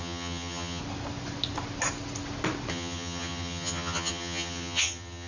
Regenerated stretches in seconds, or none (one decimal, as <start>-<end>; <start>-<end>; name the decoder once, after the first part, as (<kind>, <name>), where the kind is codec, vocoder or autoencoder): 0.0-0.8 (vocoder, HiFi-GAN); 2.7-5.3